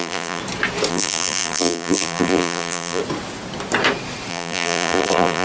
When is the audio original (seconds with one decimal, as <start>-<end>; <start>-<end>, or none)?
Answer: 0.4-0.9; 3.0-4.3

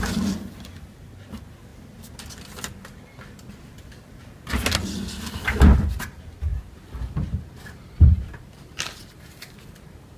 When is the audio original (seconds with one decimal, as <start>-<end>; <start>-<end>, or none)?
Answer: 0.0-6.5

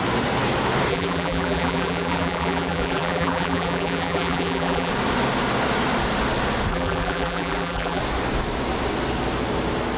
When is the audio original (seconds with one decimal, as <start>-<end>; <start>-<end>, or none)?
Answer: 0.0-0.9; 4.9-6.7; 8.0-10.0

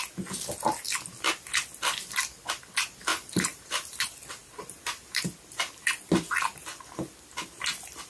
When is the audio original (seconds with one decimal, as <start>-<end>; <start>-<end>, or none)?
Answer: 0.0-3.1; 4.0-4.4; 5.3-8.1

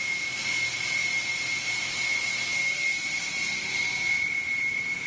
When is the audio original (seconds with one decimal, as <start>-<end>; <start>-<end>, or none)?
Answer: none